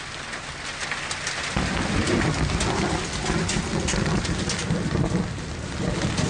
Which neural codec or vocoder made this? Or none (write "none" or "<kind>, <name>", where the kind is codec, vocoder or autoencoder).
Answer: none